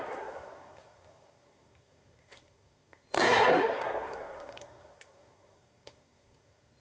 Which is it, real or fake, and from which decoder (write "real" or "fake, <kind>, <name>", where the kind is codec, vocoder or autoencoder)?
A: fake, codec, SNAC